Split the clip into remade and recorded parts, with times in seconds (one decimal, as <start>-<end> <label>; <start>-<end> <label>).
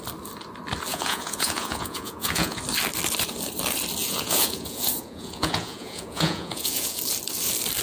0.0-0.9 recorded; 0.9-2.6 remade; 2.6-4.0 recorded; 4.0-7.0 remade; 7.0-7.8 recorded